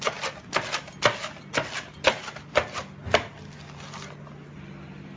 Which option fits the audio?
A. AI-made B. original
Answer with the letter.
B